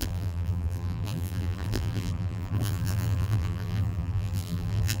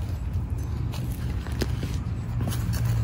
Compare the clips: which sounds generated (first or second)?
first